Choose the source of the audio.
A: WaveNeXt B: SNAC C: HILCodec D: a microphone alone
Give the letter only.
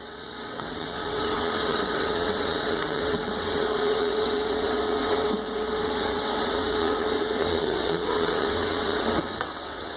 A